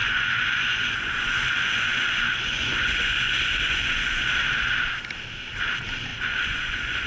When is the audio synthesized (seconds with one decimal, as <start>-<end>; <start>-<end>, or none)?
0.0-4.3; 6.1-7.1